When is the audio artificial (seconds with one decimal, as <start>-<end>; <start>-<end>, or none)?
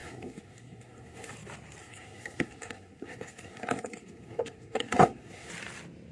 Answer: 0.0-1.3; 1.8-5.5